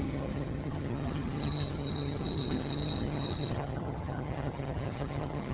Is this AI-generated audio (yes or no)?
yes